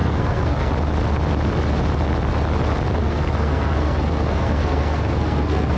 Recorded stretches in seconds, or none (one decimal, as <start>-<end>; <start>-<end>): 0.7-3.0